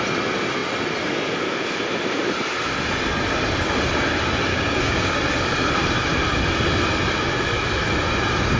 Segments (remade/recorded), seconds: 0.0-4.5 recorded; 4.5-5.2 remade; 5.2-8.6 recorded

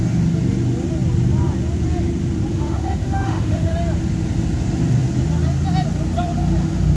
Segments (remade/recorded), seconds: 0.0-2.5 recorded; 2.5-3.7 remade; 3.7-7.0 recorded

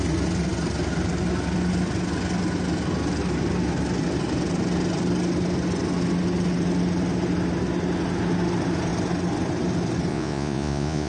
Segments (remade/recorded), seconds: 0.0-10.1 recorded; 10.1-11.1 remade

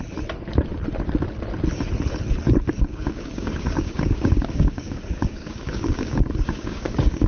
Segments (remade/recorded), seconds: 0.0-2.9 recorded; 2.9-7.3 remade

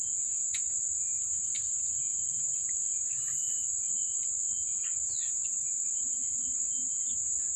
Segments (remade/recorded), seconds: 0.0-0.4 recorded; 0.4-1.1 remade; 1.1-7.6 recorded